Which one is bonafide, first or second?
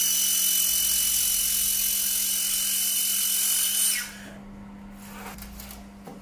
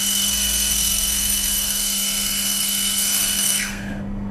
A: first